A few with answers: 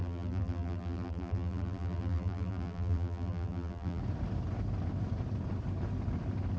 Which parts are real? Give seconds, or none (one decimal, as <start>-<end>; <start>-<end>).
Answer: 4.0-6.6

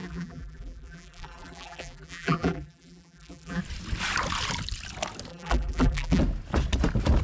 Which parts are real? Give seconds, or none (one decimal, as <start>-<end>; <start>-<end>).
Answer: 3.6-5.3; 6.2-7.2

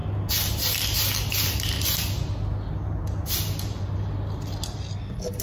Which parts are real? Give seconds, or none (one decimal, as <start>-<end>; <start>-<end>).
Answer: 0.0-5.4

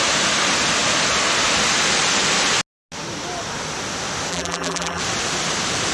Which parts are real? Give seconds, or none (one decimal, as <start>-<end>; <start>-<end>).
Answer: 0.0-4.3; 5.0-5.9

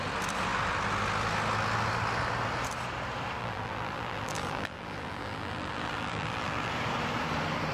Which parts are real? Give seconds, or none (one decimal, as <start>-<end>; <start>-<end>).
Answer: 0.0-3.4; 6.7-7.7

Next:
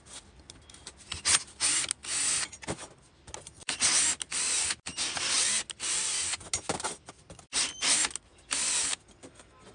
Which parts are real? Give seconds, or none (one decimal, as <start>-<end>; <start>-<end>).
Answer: 0.0-9.7